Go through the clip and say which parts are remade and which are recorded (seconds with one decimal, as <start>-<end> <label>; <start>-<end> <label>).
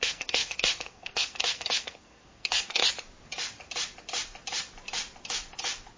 0.0-2.8 remade; 2.8-6.0 recorded